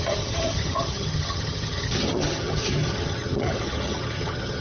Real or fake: fake